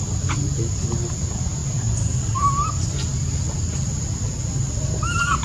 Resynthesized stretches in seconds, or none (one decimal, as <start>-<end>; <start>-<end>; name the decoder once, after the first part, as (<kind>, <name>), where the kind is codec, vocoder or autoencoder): none